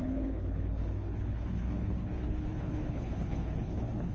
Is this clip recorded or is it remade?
remade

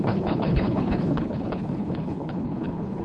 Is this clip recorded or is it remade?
remade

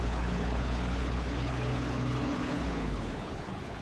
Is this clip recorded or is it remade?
remade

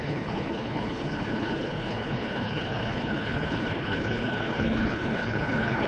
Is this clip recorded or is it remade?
remade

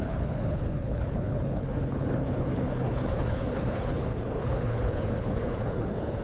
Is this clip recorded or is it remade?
remade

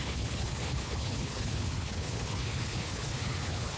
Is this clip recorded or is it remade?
remade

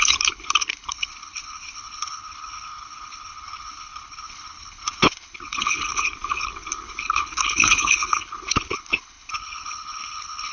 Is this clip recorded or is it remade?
remade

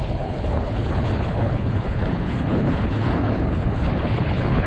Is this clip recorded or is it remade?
remade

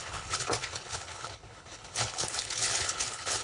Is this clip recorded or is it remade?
remade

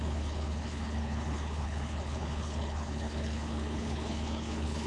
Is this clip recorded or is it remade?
remade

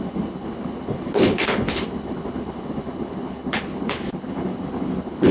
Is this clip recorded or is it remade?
remade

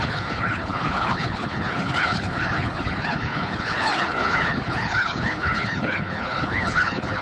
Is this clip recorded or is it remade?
remade